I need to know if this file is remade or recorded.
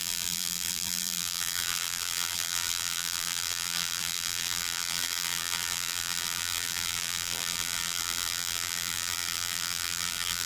remade